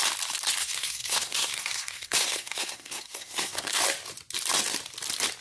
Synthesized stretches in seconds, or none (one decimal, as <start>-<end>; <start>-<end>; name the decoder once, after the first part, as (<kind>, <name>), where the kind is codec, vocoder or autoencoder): 0.6-3.8 (codec, SNAC)